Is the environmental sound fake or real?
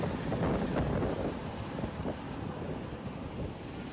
real